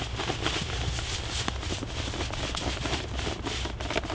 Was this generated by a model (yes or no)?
no